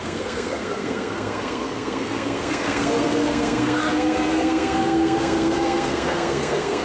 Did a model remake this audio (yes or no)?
yes